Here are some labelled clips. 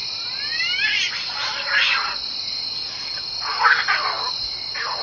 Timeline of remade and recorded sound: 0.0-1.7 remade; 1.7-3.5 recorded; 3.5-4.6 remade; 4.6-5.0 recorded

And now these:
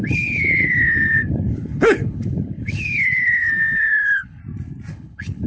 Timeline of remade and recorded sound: 0.0-4.4 remade; 4.4-4.9 recorded; 4.9-5.5 remade

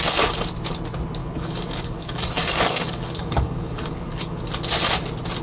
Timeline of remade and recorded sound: 0.0-1.2 recorded; 1.2-4.4 remade; 4.4-5.4 recorded